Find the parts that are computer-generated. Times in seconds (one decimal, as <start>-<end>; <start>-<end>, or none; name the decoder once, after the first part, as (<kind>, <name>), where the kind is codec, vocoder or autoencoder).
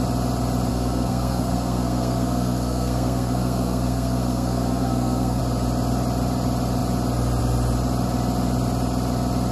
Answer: 0.7-5.4 (codec, SNAC)